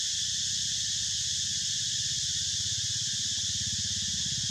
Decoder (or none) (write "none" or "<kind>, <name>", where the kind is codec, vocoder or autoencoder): none